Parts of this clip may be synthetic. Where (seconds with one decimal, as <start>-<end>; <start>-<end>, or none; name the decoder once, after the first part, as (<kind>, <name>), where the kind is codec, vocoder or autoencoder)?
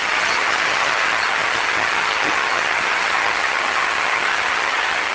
0.0-5.1 (vocoder, HiFi-GAN)